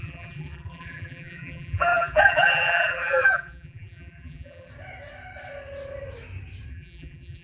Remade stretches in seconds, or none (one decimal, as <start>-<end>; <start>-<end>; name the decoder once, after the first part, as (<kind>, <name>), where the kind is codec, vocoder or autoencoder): 0.0-4.7 (vocoder, BigVGAN v2); 6.7-7.4